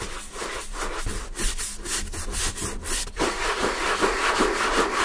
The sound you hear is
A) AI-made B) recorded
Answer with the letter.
B